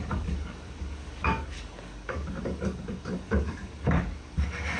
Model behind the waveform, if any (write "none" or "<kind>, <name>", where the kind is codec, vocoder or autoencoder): codec, DAC